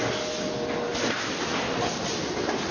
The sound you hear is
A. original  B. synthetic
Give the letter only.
A